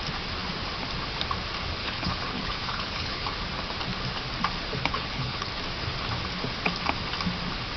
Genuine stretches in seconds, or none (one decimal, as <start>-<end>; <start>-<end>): 0.0-1.8; 3.3-4.8; 5.5-7.8